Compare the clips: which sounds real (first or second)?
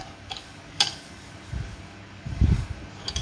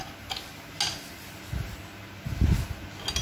second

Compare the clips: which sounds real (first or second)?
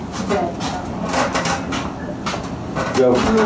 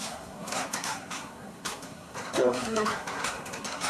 first